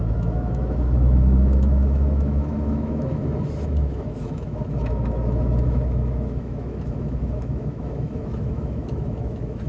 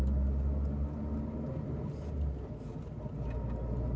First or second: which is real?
second